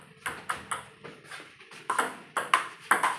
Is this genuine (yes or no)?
yes